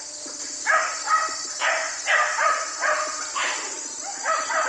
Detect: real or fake real